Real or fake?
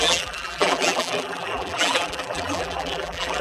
fake